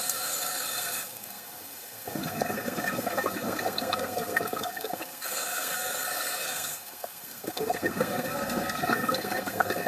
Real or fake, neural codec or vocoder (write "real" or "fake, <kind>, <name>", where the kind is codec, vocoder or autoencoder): fake, codec, SNAC